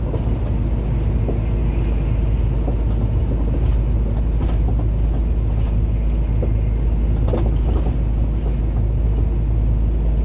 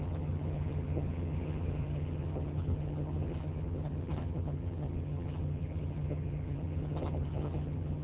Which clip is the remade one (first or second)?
second